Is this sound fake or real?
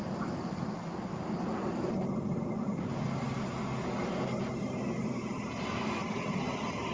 real